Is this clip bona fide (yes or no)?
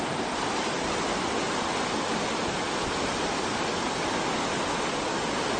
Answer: yes